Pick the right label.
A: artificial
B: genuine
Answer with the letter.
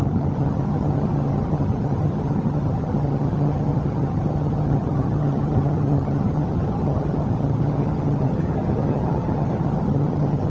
A